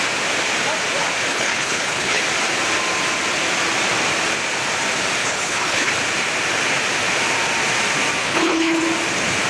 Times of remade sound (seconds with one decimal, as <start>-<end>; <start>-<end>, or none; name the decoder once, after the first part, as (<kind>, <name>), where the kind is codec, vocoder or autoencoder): 1.3-2.2 (codec, HILCodec); 5.2-5.9; 8.2-8.8